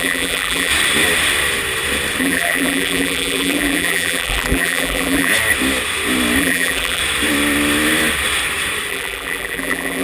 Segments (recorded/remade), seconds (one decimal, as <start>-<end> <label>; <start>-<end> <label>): 0.0-0.7 remade; 0.7-2.2 recorded; 2.2-5.3 remade; 5.3-6.4 recorded; 6.4-7.0 remade; 7.0-8.9 recorded; 8.9-10.0 remade